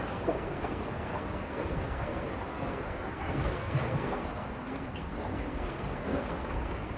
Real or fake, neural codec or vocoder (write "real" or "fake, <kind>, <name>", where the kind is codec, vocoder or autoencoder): fake, codec, SNAC